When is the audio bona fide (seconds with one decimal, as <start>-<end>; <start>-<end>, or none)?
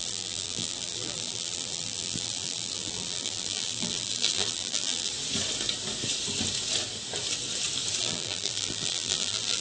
5.1-8.0